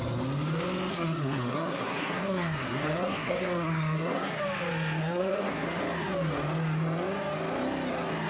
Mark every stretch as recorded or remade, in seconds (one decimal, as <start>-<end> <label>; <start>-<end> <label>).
0.0-0.9 recorded; 0.9-4.4 remade; 4.4-5.0 recorded; 5.0-5.8 remade; 5.8-8.3 recorded